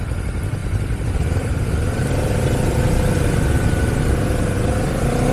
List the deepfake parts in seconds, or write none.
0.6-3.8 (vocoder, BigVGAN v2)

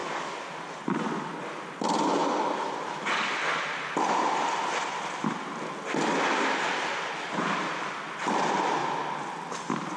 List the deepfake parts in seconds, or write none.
2.2-3.0 (vocoder, BigVGAN v2); 8.8-9.6

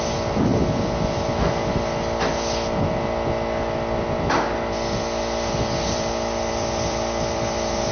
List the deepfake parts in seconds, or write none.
0.0-0.5 (vocoder, BigVGAN v2); 5.2-7.9

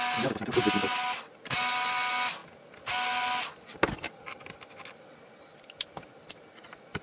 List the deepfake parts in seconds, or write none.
none

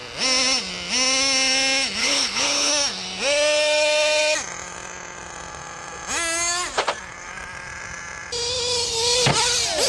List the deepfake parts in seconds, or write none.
2.0-2.7 (codec, HILCodec)

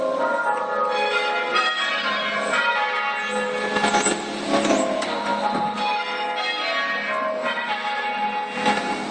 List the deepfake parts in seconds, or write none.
1.5-2.2 (vocoder, BigVGAN v2); 7.4-8.3